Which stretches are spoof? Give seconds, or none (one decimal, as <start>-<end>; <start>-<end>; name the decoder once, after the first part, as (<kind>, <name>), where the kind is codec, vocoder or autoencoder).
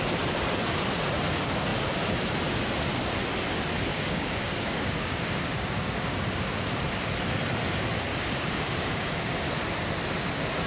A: 3.9-6.8 (codec, DAC); 8.1-9.5